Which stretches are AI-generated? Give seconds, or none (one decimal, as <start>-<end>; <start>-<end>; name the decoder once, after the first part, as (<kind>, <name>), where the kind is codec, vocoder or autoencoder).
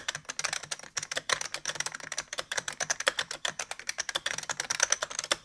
0.5-5.4 (vocoder, BigVGAN v2)